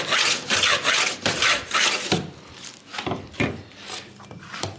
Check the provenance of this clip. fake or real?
real